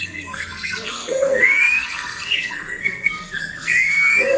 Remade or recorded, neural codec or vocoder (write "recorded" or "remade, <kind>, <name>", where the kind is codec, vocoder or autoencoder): remade, codec, SNAC